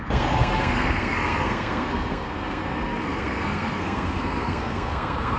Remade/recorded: remade